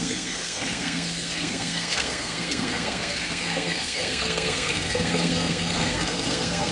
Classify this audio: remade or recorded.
remade